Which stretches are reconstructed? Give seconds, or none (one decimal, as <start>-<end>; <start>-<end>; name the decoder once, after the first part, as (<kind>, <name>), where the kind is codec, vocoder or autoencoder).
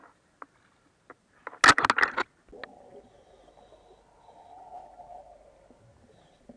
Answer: none